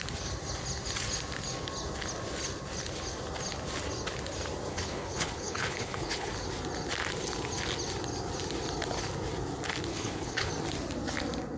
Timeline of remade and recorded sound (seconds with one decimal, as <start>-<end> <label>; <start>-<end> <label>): 0.0-4.7 recorded; 4.7-6.3 remade; 6.3-9.9 recorded; 9.9-10.5 remade; 10.5-11.6 recorded